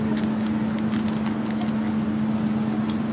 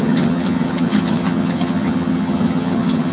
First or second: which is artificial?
second